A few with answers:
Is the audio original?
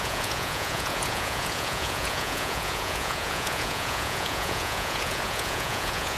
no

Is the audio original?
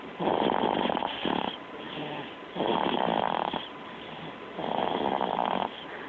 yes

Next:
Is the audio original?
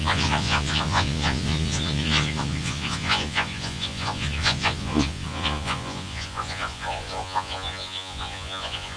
no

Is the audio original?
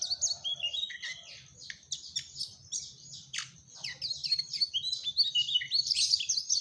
yes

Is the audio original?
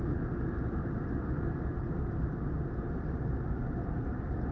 yes